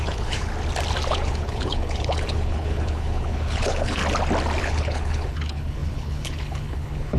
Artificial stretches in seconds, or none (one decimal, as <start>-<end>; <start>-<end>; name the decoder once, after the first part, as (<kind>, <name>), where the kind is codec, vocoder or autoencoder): 0.0-0.5 (codec, HILCodec); 1.1-4.0; 4.6-7.2